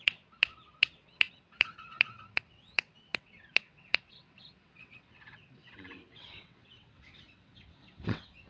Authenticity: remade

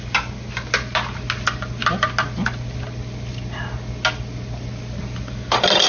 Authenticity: recorded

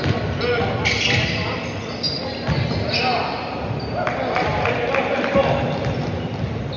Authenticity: recorded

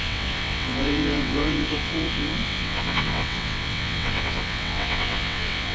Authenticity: remade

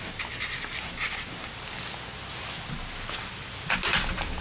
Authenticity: recorded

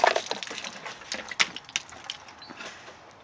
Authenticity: recorded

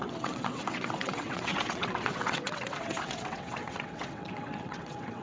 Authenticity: remade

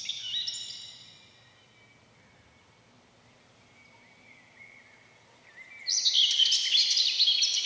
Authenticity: recorded